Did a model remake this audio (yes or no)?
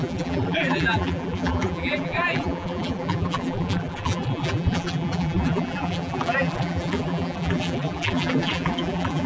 yes